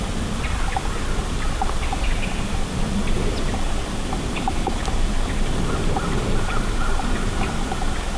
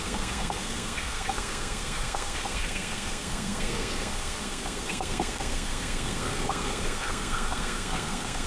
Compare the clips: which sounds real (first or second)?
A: first